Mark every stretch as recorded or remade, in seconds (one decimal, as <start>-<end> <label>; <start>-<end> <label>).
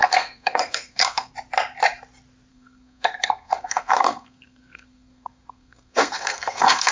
0.0-1.3 remade; 1.3-2.5 recorded; 2.5-6.9 remade